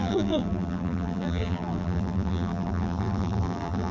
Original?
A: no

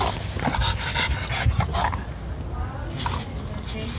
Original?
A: yes